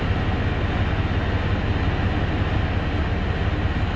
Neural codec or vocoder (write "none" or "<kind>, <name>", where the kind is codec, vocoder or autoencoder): none